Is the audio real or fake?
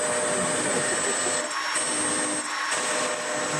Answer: real